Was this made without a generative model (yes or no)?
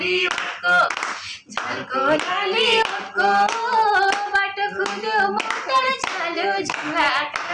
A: yes